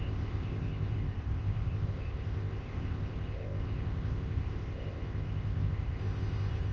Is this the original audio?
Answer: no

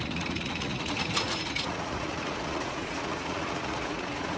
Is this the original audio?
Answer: no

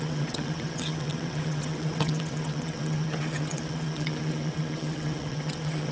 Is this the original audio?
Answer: no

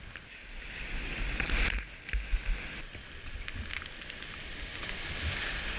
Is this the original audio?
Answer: yes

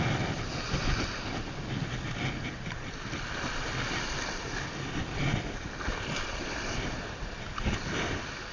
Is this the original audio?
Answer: yes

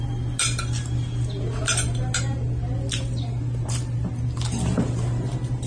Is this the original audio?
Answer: yes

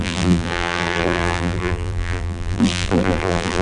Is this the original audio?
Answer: no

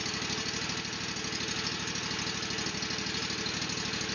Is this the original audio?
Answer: yes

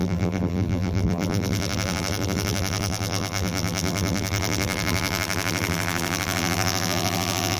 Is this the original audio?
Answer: no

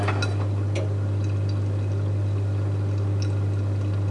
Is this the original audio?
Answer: yes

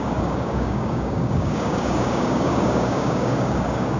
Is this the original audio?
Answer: no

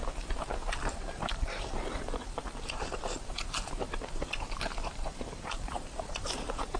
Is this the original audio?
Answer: no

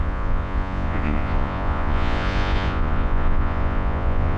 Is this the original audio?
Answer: no